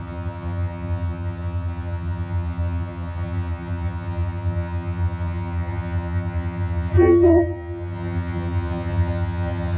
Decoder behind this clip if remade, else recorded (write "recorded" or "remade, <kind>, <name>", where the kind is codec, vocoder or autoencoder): remade, vocoder, HiFi-GAN